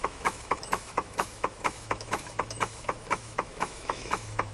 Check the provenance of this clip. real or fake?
fake